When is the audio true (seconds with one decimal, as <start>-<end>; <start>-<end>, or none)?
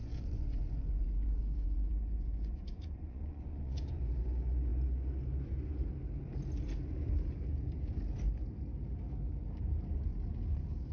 4.0-10.9